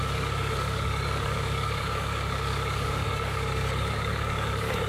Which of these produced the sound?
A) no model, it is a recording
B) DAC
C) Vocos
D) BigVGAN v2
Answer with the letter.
B